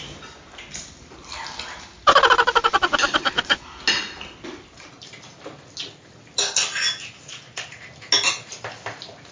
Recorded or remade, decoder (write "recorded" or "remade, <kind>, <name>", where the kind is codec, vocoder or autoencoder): recorded